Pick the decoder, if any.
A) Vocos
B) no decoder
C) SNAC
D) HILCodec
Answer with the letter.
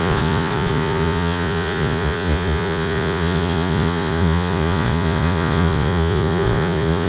A